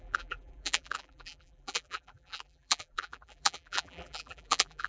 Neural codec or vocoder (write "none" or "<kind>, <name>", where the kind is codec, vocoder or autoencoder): vocoder, BigVGAN v2